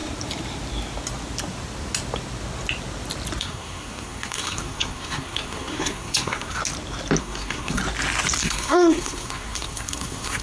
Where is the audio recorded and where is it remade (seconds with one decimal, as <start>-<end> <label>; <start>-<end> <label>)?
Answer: 0.0-3.4 recorded; 3.4-6.6 remade; 6.6-7.2 recorded; 7.2-7.8 remade; 7.8-8.4 recorded; 8.4-10.4 remade